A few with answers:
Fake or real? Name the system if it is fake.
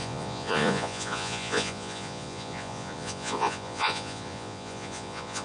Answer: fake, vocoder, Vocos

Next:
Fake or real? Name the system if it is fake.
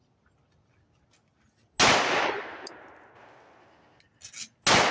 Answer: real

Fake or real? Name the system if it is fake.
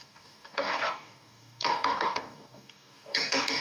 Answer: fake, codec, DAC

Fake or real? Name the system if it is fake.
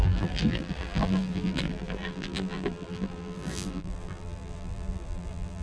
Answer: fake, vocoder, BigVGAN v2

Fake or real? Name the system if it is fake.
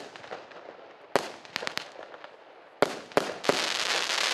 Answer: real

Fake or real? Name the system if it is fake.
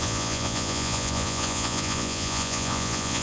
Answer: fake, vocoder, Vocos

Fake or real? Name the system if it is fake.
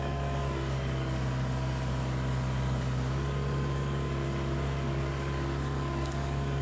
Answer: fake, codec, DAC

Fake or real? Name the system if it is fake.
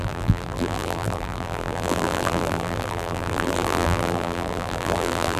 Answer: fake, vocoder, BigVGAN v2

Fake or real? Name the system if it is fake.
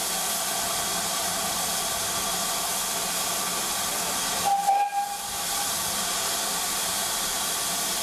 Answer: real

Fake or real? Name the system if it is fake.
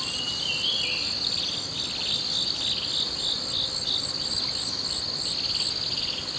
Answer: real